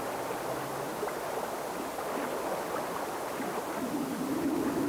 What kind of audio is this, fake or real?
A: real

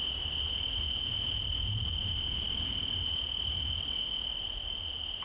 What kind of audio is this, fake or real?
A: real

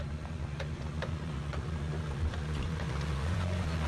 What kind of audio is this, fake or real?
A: fake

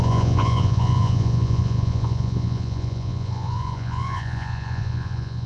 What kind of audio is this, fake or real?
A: fake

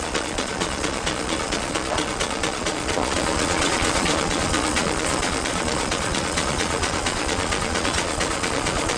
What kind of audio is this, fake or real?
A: fake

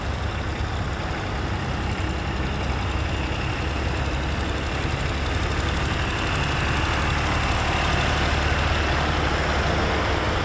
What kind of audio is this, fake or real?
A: real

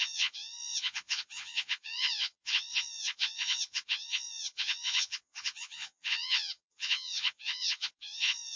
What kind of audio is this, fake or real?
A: fake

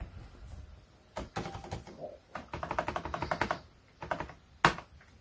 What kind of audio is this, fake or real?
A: real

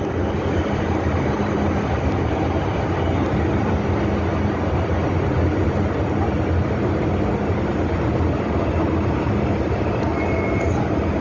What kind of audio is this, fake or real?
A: real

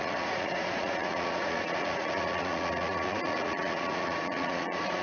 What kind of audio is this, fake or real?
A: fake